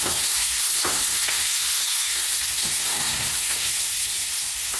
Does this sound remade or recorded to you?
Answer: remade